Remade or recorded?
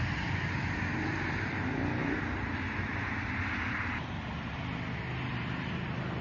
recorded